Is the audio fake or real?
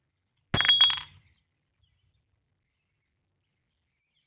real